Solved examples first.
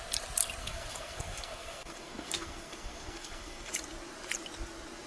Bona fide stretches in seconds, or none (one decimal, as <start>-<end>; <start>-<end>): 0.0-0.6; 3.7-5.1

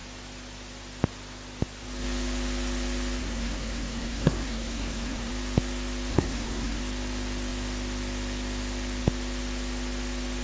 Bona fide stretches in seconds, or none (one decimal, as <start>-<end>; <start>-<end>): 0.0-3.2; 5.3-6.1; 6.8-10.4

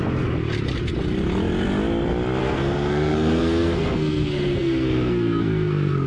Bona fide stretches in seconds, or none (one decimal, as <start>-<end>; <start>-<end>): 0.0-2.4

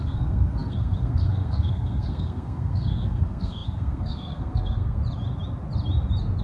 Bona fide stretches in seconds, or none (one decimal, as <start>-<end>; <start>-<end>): 5.0-6.4

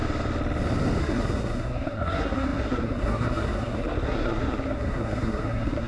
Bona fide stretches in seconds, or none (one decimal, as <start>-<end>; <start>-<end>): 0.0-1.0